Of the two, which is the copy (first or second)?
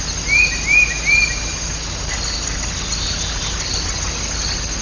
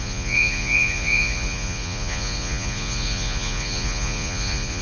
second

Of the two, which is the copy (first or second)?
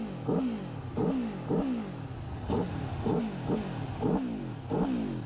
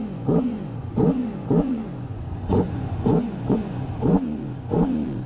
second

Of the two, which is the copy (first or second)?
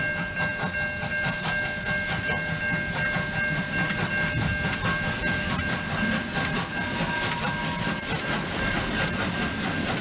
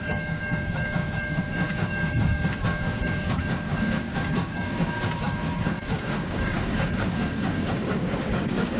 second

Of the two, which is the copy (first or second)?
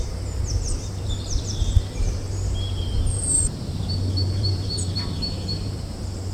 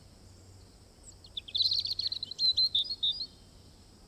first